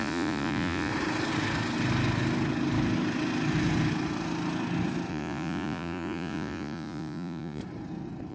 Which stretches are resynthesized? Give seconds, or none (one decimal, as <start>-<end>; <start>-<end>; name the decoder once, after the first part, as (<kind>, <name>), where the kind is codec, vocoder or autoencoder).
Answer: 0.0-0.9 (vocoder, Vocos); 5.1-7.6